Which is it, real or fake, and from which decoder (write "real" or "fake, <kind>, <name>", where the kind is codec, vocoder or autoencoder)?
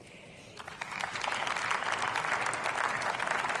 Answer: real